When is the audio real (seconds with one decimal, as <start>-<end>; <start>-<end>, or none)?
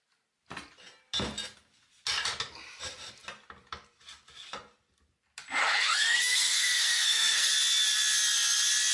0.0-5.6; 7.5-8.9